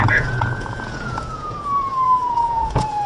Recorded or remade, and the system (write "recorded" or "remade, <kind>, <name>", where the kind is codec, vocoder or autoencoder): remade, vocoder, Vocos